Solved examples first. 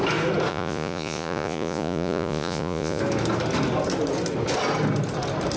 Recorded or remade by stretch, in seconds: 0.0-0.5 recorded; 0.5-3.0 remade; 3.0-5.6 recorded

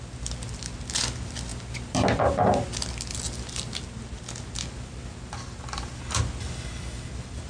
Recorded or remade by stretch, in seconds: 0.0-7.5 recorded

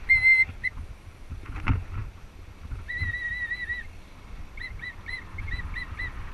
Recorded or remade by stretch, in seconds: 0.0-6.3 recorded

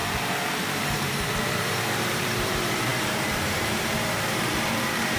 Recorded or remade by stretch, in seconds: 0.0-5.2 remade

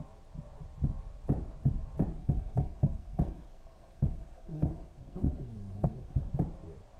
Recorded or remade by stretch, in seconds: 0.0-2.2 recorded; 2.2-6.3 remade; 6.3-7.0 recorded

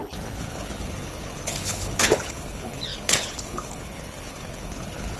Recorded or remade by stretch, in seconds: 0.0-5.2 remade